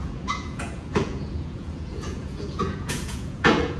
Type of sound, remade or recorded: remade